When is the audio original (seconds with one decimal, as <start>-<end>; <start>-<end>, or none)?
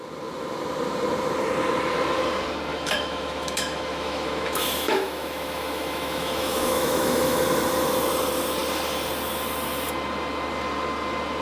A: 0.0-2.7; 7.4-11.4